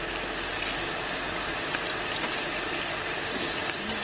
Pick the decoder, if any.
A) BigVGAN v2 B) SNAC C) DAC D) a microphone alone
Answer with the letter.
D